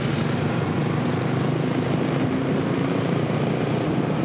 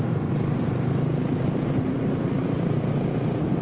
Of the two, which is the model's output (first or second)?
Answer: second